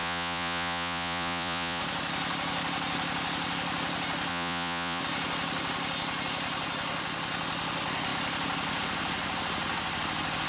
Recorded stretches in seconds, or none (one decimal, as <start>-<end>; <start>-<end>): 1.8-4.3; 5.0-10.5